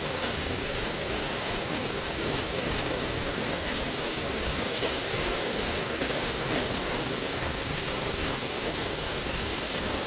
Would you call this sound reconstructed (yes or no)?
yes